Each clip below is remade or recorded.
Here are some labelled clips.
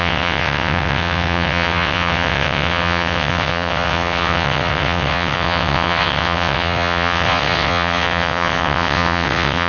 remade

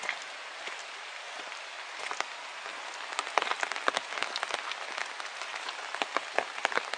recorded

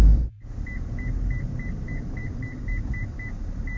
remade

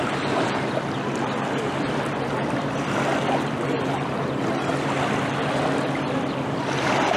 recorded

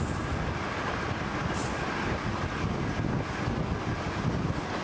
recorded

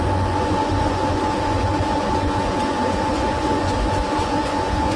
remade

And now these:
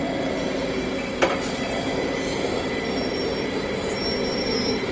recorded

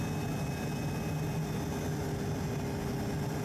recorded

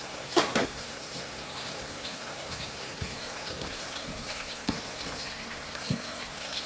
remade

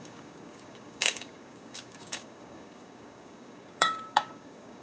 remade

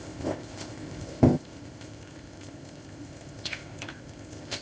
remade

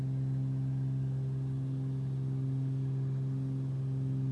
recorded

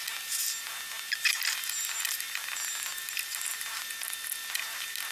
recorded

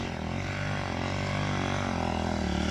recorded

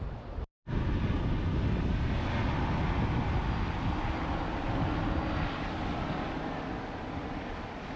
recorded